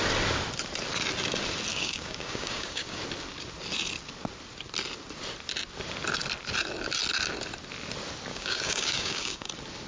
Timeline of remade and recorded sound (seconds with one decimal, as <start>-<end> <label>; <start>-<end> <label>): 0.0-1.7 recorded; 1.7-3.0 remade; 3.0-8.3 recorded; 8.3-9.5 remade; 9.5-9.9 recorded